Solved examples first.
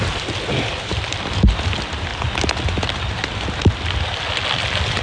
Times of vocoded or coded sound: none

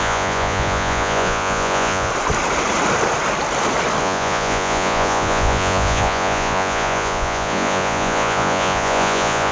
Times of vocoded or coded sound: 0.0-2.1; 4.0-9.5

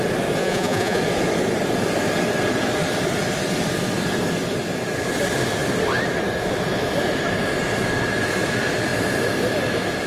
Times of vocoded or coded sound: 0.4-1.0

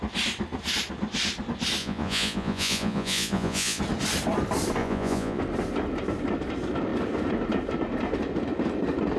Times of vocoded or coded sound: 1.8-3.8; 4.8-5.4

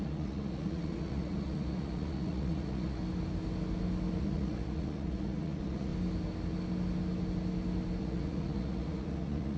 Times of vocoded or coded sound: 0.0-3.0; 4.2-5.9; 8.0-9.6

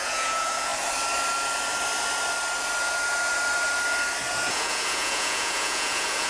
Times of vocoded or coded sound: 0.0-0.7; 4.5-6.3